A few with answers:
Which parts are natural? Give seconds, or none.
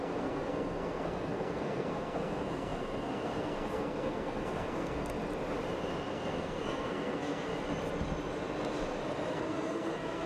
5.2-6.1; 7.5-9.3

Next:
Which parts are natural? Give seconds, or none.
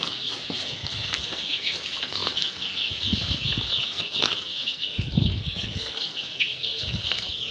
none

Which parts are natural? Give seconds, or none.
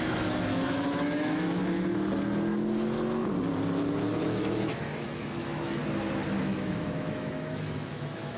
1.6-4.2; 5.8-6.4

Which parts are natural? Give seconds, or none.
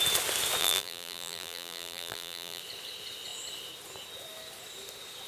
0.0-0.6; 2.6-5.3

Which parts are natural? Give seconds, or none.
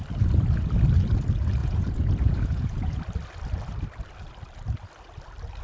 0.0-1.6; 3.0-5.6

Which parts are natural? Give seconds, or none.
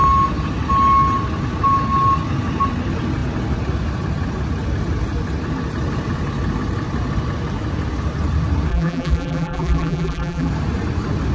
0.0-8.7; 10.5-11.3